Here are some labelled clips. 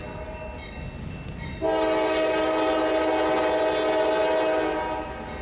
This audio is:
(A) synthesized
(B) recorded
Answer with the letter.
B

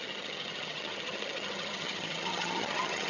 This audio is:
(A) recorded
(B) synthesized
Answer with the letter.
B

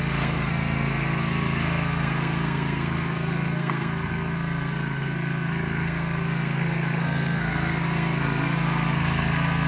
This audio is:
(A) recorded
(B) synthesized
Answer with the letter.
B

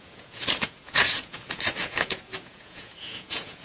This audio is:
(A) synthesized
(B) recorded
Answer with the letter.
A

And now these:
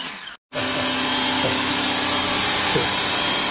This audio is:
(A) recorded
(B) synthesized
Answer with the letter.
A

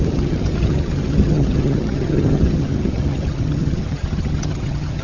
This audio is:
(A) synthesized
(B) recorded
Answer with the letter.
A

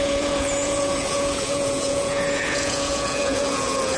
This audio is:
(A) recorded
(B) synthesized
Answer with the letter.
B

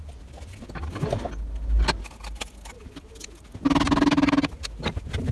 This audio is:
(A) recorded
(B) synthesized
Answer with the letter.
A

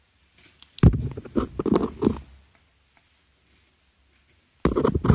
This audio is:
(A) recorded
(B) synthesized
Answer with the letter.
A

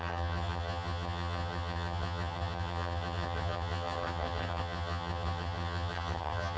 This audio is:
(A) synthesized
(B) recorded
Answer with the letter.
A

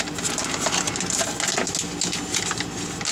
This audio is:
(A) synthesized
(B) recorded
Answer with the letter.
B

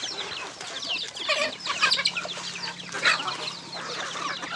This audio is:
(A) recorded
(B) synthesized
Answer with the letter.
A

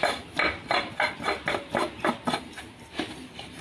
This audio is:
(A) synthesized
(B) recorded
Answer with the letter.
B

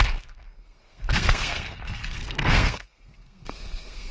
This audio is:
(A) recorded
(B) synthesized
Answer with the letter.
B